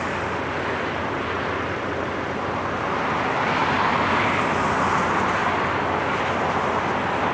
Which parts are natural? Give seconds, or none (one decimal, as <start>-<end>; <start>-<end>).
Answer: 0.0-7.3